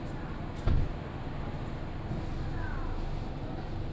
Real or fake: real